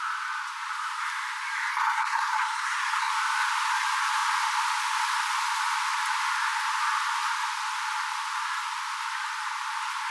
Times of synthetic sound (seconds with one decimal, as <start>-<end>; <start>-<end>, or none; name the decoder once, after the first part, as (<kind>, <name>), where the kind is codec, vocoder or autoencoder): 1.7-3.1 (codec, SNAC)

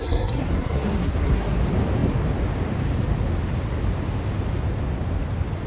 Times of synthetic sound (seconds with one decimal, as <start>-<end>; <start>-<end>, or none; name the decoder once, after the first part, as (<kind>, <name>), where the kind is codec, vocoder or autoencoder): 0.0-1.6 (codec, SNAC)

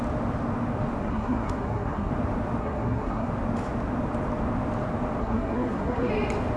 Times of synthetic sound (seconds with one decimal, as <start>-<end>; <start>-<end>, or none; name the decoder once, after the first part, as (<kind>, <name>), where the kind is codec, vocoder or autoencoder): 1.0-2.1 (codec, SNAC); 2.6-3.3; 5.2-6.1

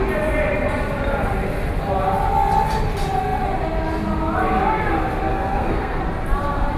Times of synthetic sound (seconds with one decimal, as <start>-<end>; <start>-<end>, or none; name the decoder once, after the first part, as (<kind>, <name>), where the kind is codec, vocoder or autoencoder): 5.3-6.0 (codec, SNAC)

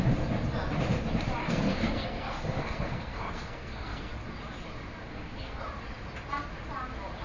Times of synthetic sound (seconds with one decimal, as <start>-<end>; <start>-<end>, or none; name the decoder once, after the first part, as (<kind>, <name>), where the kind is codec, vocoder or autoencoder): 1.4-4.1 (codec, SNAC); 5.0-5.6

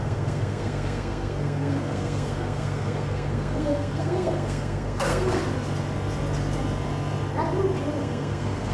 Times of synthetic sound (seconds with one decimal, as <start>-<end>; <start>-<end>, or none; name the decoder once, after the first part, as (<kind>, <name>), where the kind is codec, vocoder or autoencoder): 0.0-5.4 (codec, SNAC); 8.0-8.7

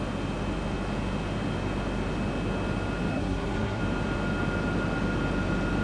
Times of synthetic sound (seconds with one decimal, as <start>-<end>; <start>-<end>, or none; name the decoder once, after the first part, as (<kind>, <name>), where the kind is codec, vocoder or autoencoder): 3.1-3.8 (codec, SNAC)

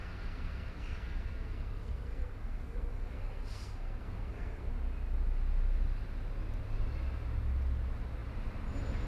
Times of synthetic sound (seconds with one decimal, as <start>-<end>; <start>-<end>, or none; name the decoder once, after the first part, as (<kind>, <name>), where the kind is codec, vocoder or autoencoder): 0.0-4.7 (codec, SNAC)